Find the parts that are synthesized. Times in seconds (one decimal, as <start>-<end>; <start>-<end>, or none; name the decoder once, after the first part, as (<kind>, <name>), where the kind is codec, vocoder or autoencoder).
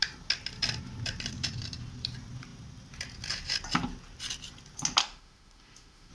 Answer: 5.0-6.1 (autoencoder, DAC-VAE)